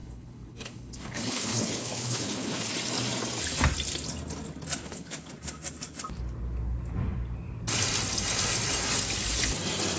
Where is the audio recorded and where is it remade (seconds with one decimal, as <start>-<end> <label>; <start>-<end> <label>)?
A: 0.0-2.7 remade; 2.7-4.8 recorded; 4.8-5.3 remade; 5.3-10.0 recorded